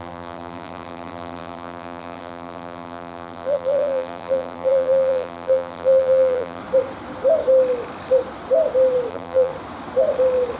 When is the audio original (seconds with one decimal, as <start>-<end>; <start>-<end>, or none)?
6.6-9.1; 9.5-10.6

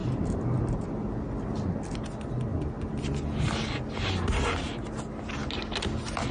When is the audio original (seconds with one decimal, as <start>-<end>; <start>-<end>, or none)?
0.9-6.3

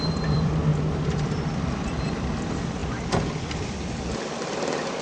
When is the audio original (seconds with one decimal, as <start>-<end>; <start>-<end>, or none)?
0.7-1.9

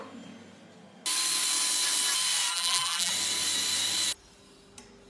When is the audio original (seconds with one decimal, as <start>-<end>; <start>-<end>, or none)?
0.0-2.5; 3.1-5.1

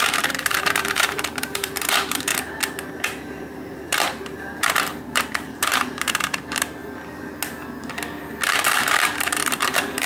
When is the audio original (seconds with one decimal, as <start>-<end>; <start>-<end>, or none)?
2.3-2.9; 6.8-8.5

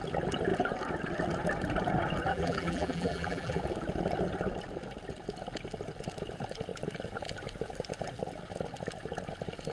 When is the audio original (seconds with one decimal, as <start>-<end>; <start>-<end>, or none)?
0.0-2.3; 3.6-9.7